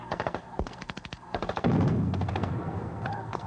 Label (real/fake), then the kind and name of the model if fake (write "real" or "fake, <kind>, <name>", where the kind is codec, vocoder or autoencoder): fake, codec, SNAC